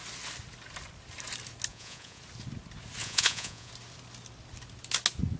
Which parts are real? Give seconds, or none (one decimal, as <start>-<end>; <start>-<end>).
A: 0.0-1.7; 2.2-3.0; 3.7-5.4